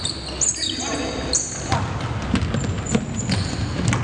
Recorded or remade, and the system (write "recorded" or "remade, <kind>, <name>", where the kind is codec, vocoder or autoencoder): recorded